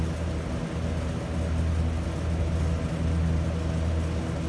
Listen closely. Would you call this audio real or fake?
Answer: real